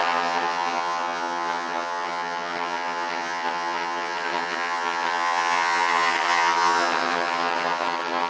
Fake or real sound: fake